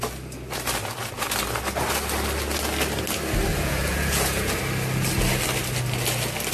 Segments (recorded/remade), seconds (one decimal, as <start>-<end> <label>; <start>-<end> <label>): 0.0-3.5 recorded; 3.5-4.6 remade; 4.6-6.5 recorded